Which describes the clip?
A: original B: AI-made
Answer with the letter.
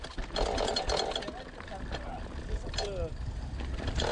A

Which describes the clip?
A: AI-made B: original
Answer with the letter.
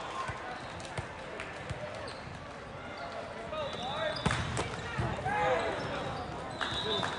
B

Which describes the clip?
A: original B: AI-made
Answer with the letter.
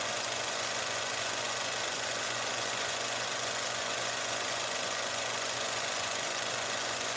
B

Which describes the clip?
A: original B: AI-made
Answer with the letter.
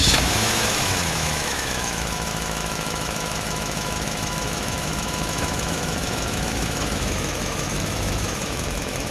B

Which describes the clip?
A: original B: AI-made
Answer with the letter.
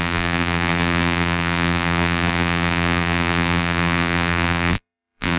B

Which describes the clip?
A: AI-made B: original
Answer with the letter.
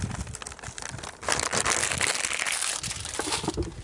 B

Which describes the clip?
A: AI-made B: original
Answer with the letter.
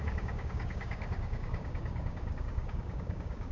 A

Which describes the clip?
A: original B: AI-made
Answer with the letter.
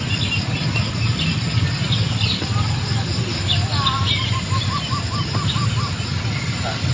A